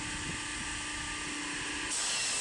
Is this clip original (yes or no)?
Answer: yes